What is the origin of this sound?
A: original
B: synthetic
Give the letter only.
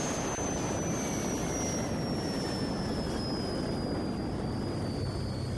A